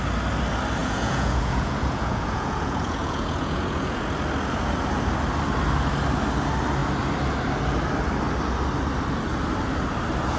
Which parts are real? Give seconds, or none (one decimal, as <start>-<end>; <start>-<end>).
0.0-0.8; 4.0-10.4

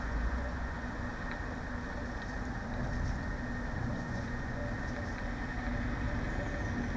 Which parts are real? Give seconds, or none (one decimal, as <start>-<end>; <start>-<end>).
1.1-3.9; 4.6-7.0

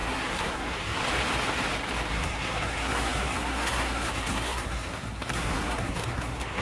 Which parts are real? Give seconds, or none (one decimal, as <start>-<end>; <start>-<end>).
1.0-2.1

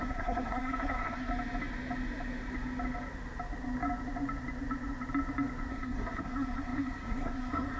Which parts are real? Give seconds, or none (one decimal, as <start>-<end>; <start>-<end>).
1.3-5.7